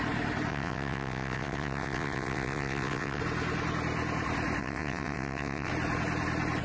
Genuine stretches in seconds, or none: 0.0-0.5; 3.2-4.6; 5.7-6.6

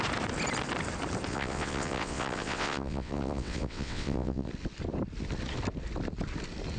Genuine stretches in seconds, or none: 0.0-1.3; 4.5-6.8

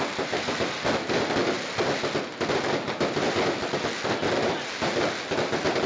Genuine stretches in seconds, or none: 0.0-5.9

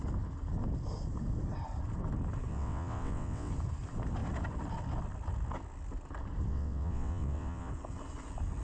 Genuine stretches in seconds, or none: 0.0-2.5; 3.5-6.5; 7.7-8.6

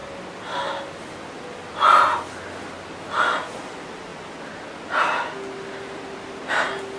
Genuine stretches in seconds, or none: 0.0-7.0